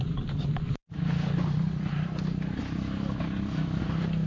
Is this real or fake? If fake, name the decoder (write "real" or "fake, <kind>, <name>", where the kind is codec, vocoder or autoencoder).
fake, vocoder, BigVGAN v2